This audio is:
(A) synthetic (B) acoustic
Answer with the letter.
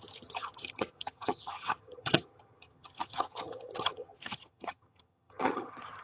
A